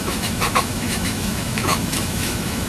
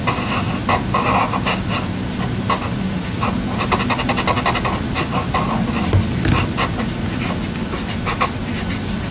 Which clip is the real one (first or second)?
second